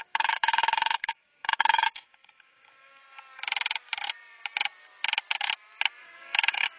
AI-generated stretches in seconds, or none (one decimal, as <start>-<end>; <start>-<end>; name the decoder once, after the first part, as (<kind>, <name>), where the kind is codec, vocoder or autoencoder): 0.0-3.0 (codec, DAC); 6.0-6.8